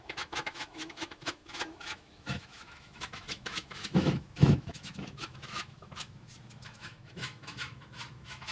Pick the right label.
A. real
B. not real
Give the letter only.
B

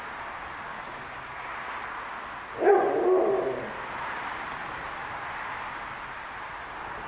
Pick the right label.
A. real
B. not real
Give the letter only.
A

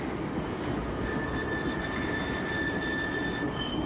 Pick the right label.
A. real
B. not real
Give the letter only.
A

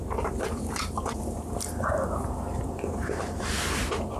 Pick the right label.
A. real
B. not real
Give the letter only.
B